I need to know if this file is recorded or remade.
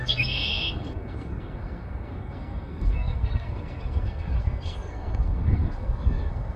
remade